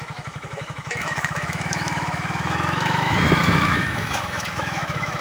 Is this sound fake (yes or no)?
yes